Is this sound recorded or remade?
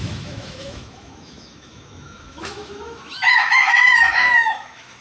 remade